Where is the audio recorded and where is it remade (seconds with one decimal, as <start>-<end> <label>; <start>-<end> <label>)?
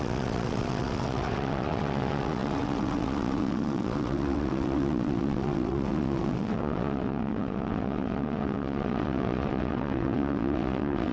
0.0-11.1 remade